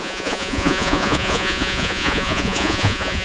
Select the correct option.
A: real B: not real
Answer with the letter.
B